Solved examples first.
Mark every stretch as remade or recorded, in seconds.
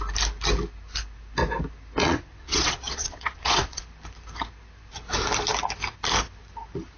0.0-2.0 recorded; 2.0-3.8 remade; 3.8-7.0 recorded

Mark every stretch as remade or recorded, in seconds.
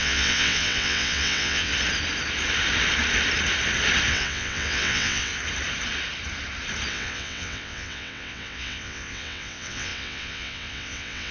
0.0-1.7 remade; 1.7-4.1 recorded; 4.1-5.3 remade; 5.3-6.9 recorded; 6.9-11.3 remade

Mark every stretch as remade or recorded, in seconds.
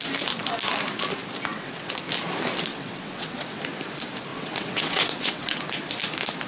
0.0-1.5 recorded; 1.5-2.0 remade; 2.0-2.7 recorded; 2.7-3.6 remade; 3.6-4.3 recorded; 4.3-5.6 remade; 5.6-6.5 recorded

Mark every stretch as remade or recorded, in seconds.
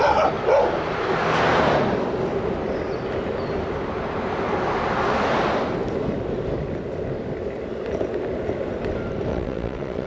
0.0-9.3 recorded; 9.3-10.1 remade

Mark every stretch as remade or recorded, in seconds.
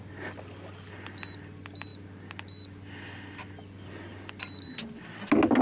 0.0-5.6 recorded